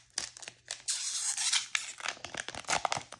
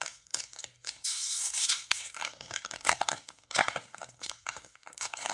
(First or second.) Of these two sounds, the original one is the first